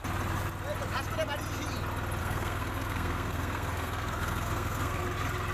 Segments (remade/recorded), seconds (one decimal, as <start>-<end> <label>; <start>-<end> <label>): 0.0-2.2 recorded; 2.2-5.0 remade; 5.0-5.5 recorded